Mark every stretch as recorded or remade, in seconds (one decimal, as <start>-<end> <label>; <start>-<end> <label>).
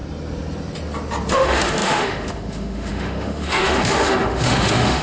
0.0-1.3 recorded; 1.3-5.0 remade